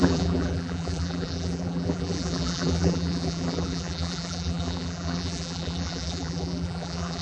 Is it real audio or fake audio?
fake